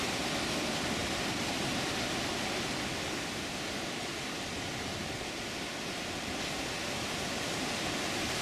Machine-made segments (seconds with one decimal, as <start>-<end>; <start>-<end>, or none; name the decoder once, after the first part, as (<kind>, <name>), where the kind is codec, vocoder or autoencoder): none